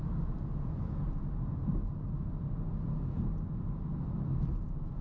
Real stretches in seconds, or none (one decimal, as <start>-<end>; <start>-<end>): 0.0-5.0

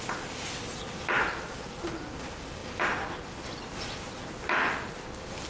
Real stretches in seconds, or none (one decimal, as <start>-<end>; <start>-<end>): 0.0-5.5

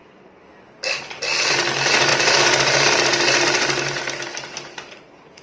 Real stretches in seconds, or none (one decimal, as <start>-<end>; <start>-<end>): 0.0-5.4

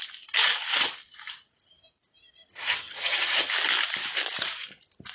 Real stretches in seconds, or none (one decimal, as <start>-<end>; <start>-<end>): 0.0-2.5; 3.5-5.1

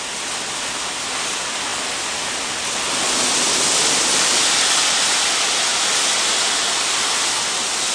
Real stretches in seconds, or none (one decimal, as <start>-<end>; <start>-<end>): 5.7-7.9

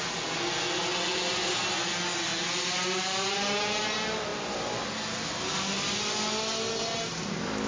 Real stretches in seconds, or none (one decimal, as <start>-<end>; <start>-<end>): 0.0-7.7